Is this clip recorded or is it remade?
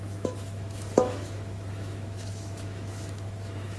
remade